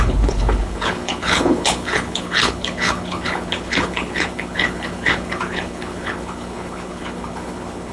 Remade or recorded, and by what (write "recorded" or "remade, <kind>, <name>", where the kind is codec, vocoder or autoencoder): remade, codec, HILCodec